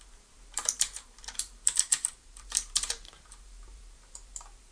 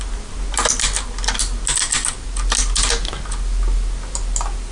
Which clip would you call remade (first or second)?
first